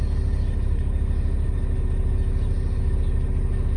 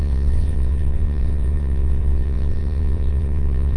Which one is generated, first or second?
second